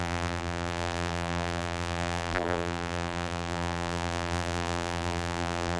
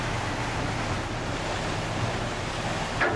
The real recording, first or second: second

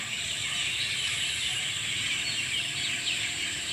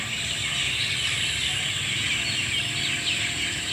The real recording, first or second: second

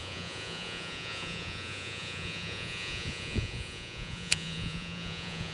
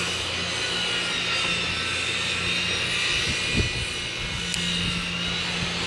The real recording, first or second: second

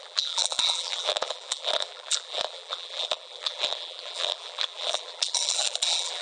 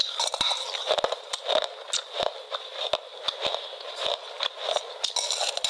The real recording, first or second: second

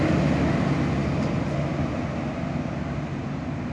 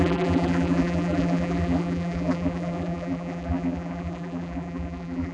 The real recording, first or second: first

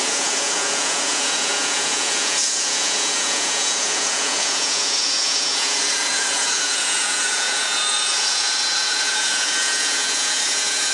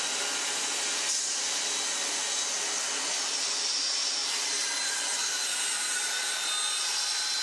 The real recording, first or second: second